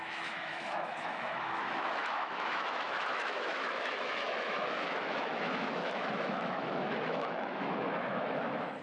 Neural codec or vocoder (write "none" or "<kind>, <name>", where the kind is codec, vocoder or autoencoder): autoencoder, DAC-VAE